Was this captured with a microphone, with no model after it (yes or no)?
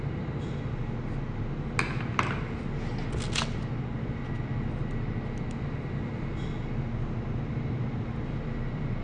yes